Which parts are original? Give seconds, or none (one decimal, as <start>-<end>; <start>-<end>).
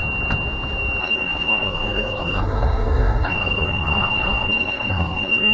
0.0-1.0